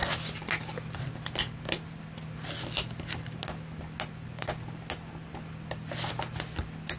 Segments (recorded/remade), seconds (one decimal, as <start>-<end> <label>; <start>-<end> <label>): 0.0-7.0 recorded